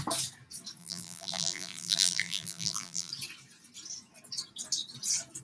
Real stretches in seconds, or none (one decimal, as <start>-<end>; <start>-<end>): 0.0-0.8; 3.1-5.4